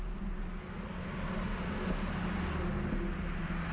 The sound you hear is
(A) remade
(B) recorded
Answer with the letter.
B